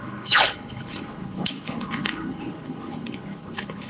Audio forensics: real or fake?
fake